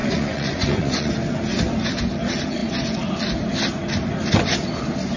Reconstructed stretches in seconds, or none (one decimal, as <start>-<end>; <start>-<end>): 0.0-1.1